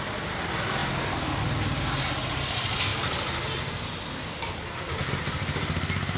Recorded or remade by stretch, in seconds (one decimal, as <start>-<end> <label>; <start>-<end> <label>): 0.0-6.2 recorded